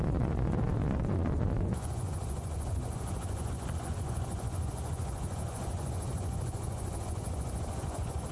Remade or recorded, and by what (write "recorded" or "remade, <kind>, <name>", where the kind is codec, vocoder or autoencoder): remade, vocoder, Vocos